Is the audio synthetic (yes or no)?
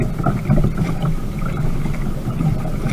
no